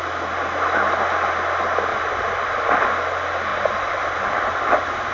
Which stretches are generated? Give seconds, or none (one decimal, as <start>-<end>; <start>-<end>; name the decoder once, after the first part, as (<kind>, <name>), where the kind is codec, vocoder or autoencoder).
1.9-2.9 (vocoder, BigVGAN v2); 3.5-5.1